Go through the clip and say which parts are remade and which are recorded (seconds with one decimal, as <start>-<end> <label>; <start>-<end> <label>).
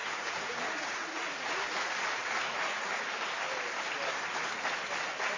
0.0-2.8 remade; 2.8-5.4 recorded